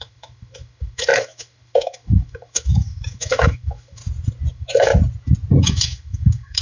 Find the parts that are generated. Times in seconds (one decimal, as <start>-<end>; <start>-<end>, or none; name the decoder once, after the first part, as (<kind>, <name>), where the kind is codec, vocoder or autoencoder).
0.0-4.0 (autoencoder, DAC-VAE); 4.5-4.9; 5.6-6.6